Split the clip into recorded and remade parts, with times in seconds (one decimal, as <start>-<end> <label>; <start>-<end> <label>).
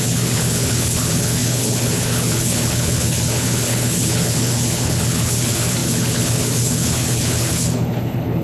0.0-8.4 remade